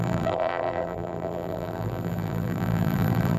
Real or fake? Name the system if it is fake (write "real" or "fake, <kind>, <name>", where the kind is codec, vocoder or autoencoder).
fake, vocoder, BigVGAN v2